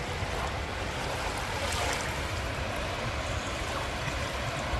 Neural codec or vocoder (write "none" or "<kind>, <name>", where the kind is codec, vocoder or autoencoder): none